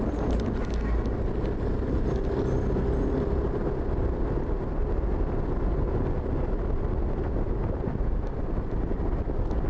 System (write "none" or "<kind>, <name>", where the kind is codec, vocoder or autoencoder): none